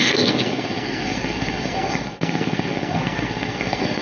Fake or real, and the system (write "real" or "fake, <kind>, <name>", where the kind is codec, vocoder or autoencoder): fake, codec, SNAC